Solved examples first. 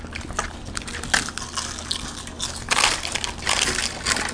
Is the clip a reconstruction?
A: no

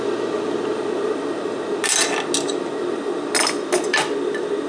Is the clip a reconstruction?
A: no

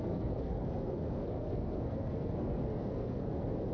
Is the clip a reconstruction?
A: yes